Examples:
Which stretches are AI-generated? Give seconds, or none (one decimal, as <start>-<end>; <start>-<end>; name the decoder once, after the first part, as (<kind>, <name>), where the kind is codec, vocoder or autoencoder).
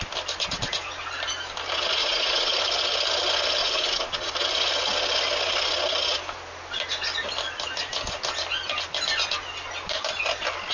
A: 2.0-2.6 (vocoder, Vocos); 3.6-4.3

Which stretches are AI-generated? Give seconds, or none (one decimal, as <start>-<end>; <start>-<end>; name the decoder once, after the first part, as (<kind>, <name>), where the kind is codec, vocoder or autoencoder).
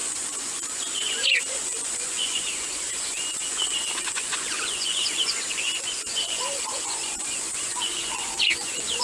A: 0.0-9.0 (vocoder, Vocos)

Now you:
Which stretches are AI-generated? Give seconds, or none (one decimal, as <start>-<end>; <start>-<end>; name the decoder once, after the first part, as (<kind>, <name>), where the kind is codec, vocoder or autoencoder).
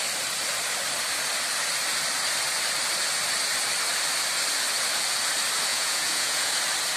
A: 5.7-6.5 (vocoder, Vocos)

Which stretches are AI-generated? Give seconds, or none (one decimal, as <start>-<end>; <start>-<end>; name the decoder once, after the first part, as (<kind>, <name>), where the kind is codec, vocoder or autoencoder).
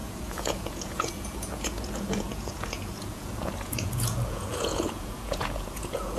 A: 0.0-6.2 (vocoder, Vocos)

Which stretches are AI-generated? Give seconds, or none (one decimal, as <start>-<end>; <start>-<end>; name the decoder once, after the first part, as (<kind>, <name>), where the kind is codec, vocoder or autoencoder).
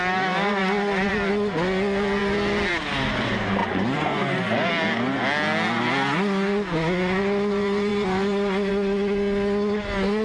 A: 3.6-4.7 (vocoder, Vocos)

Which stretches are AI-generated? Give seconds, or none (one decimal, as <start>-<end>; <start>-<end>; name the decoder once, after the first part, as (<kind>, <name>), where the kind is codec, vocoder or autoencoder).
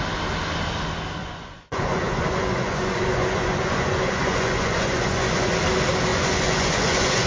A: 1.2-5.6 (vocoder, Vocos); 6.1-7.3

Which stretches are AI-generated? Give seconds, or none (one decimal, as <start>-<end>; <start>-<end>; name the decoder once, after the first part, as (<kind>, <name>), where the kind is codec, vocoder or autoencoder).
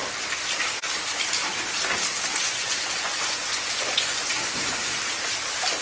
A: 2.3-5.0 (vocoder, Vocos)